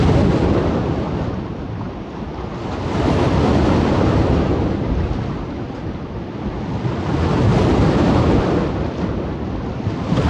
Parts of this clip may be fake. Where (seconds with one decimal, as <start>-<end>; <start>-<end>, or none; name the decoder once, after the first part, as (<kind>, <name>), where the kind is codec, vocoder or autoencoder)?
7.5-8.4 (vocoder, BigVGAN v2)